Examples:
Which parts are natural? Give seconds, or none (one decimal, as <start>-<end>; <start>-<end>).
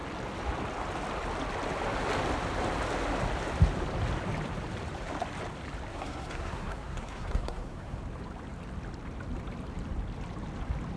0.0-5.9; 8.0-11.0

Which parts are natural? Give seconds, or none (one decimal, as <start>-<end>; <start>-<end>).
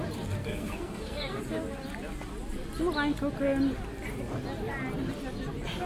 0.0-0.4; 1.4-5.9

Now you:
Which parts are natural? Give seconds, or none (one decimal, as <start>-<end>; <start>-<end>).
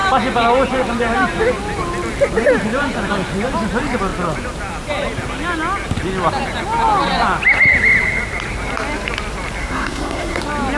0.0-9.6; 10.4-10.8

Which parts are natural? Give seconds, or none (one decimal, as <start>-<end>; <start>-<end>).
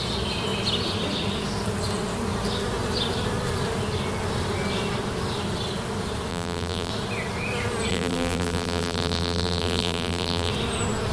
0.0-6.3; 6.9-7.9; 10.5-11.1